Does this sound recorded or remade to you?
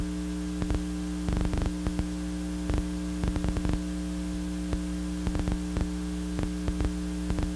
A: recorded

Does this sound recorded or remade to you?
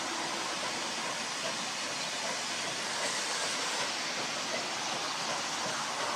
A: recorded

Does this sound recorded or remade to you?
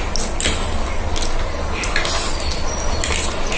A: recorded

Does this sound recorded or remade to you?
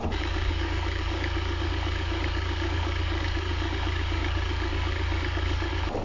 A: remade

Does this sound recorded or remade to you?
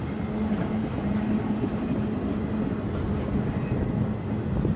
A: recorded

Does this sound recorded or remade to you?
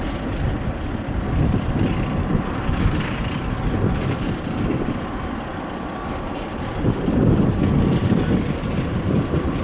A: remade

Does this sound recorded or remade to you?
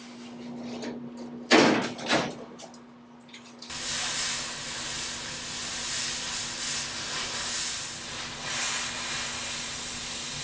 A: recorded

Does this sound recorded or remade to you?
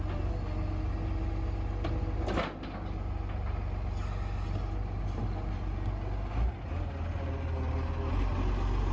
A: recorded